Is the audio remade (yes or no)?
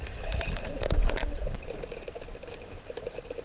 yes